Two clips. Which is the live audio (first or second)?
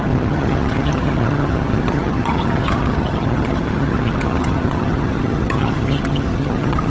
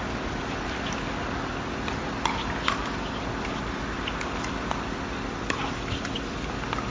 second